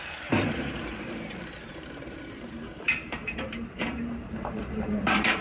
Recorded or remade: remade